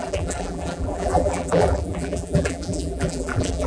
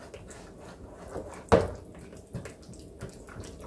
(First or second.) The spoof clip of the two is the first